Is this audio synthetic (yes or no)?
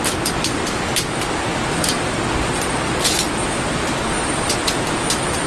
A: no